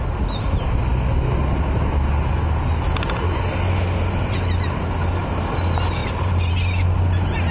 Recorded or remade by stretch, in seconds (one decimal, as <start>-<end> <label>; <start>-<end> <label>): 0.0-6.0 recorded; 6.0-6.5 remade; 6.5-7.5 recorded